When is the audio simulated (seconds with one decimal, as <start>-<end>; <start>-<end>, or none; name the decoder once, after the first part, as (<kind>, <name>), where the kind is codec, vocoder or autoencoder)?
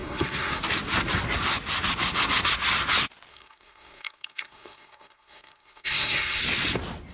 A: 0.0-0.6 (codec, SNAC); 3.3-6.4